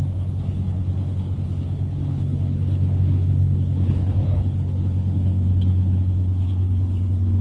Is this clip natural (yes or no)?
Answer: no